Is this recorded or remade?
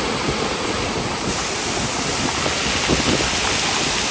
recorded